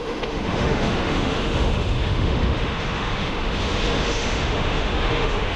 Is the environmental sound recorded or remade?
remade